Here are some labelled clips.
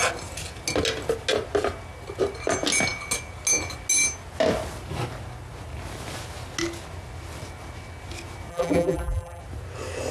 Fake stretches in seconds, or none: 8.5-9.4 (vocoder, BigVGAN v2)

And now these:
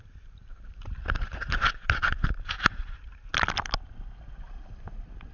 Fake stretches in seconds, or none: 0.0-2.0 (vocoder, BigVGAN v2); 2.7-3.3

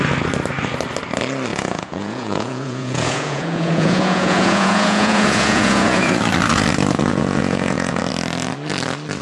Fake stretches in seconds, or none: 1.5-6.2 (vocoder, Vocos); 7.1-8.0

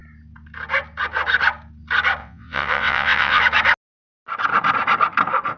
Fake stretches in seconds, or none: 2.2-3.4 (vocoder, WaveNeXt)

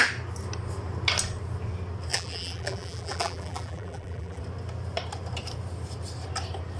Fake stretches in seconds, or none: 2.1-4.4 (vocoder, BigVGAN v2)

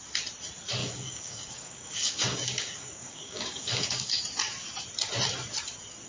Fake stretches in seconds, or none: 0.8-4.2 (codec, DAC)

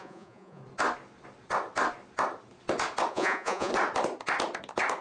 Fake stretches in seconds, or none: 0.0-0.6 (vocoder, Vocos); 3.1-3.7

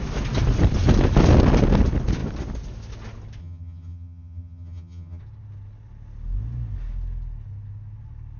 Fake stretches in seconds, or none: 3.4-5.2 (vocoder, HiFi-GAN)